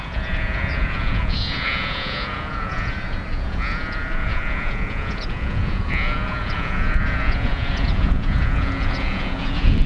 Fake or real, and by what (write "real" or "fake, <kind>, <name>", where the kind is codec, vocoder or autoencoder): fake, vocoder, Vocos